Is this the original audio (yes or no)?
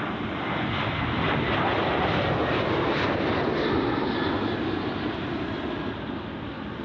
yes